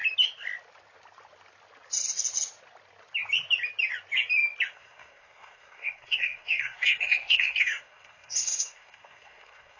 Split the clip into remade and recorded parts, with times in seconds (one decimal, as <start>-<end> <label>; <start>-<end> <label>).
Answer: 0.0-4.7 recorded; 4.7-9.8 remade